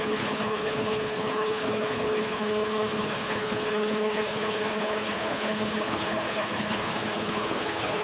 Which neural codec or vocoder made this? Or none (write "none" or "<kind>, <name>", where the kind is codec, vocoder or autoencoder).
codec, HILCodec